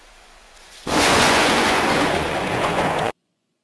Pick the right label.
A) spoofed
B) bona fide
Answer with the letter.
A